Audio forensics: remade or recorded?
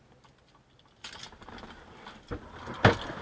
recorded